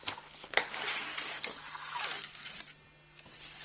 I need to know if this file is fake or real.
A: real